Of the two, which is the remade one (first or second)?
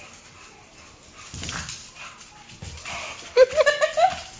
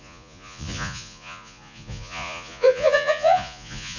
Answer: second